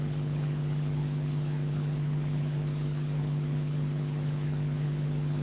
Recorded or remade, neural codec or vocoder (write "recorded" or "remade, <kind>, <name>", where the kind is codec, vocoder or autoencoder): remade, codec, HILCodec